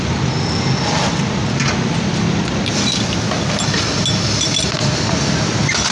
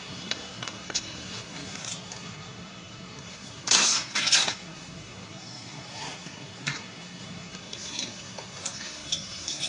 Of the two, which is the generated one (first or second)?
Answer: second